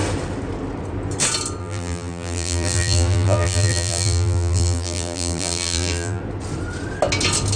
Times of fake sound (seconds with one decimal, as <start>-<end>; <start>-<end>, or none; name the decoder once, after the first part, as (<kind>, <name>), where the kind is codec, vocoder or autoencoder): 1.6-6.2 (vocoder, BigVGAN v2)